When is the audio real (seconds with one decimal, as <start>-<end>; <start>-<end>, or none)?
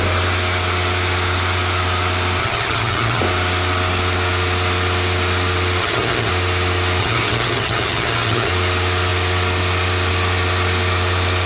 0.0-2.4; 3.2-5.8; 6.3-7.0; 8.5-11.5